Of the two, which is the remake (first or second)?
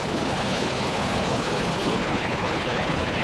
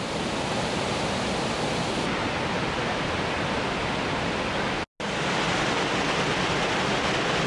first